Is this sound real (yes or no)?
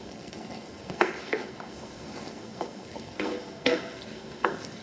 no